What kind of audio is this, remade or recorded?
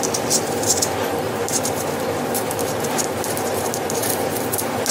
recorded